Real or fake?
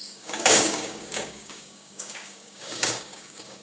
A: fake